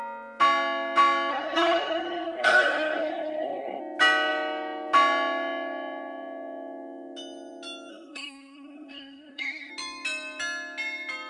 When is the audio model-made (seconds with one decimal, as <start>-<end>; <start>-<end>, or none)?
1.3-3.8; 7.9-9.7